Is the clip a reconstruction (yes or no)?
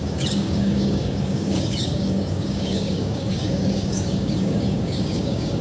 yes